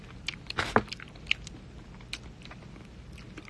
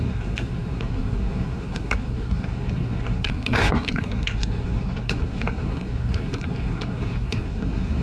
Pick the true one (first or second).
first